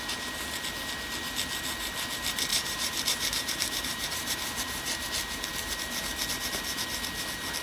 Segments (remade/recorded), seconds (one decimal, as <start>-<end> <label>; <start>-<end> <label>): 0.0-2.5 recorded; 2.5-4.9 remade; 4.9-7.6 recorded